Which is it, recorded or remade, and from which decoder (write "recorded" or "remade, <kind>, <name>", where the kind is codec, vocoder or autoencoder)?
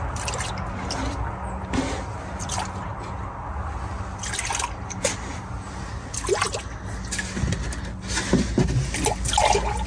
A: recorded